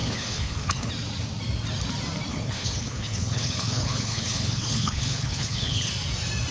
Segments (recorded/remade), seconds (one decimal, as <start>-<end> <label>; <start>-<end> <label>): 0.0-0.9 remade; 0.9-2.3 recorded; 2.3-5.9 remade; 5.9-6.5 recorded